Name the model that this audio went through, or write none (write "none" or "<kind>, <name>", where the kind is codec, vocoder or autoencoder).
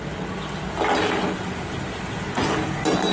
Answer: none